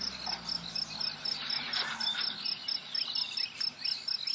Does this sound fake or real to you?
real